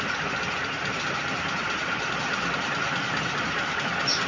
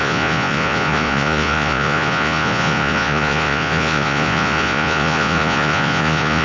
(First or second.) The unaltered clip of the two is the first